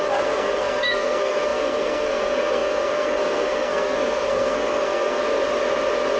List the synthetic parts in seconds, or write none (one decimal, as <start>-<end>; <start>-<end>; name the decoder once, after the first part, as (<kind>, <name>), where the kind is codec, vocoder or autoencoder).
0.0-5.2 (codec, SNAC)